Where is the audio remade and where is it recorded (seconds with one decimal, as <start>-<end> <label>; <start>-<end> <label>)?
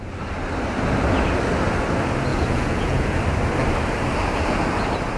0.0-2.3 recorded; 2.3-3.2 remade; 3.2-5.2 recorded